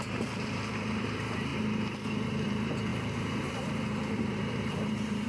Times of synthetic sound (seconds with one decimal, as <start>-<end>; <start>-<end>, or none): 0.0-5.3